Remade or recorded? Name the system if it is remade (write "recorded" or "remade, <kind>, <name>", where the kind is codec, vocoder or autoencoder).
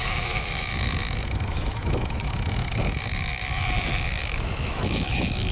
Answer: remade, autoencoder, DAC-VAE